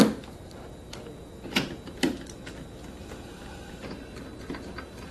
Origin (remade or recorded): recorded